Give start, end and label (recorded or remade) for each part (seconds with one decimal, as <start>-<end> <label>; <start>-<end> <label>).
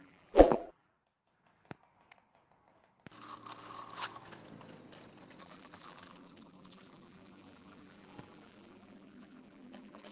0.0-1.0 remade; 1.0-5.4 recorded; 5.4-10.1 remade